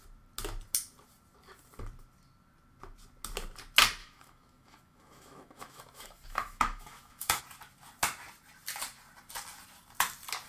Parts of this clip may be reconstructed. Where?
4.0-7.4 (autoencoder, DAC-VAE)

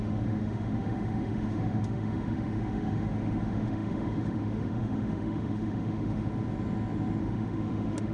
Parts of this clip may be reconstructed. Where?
0.0-6.3 (autoencoder, DAC-VAE); 7.2-8.1

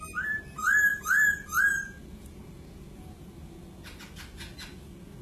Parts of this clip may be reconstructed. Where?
none

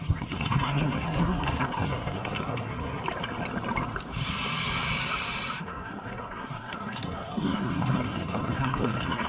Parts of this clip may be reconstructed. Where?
0.0-3.0 (codec, SNAC); 5.6-9.3

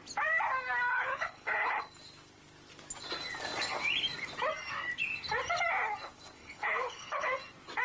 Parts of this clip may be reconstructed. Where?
0.9-1.8 (codec, HILCodec); 6.4-7.3

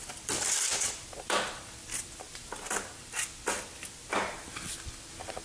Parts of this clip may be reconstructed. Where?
0.0-1.9 (vocoder, BigVGAN v2)